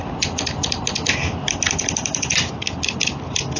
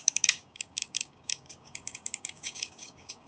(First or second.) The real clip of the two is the first